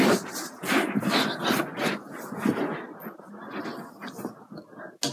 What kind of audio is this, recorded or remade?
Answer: recorded